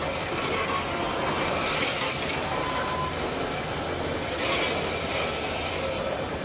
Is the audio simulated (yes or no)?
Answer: no